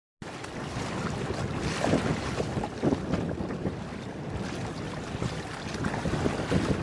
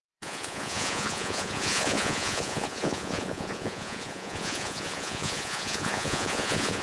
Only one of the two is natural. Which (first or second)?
first